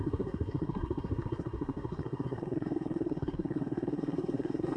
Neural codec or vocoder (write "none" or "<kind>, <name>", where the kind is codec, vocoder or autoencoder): codec, SNAC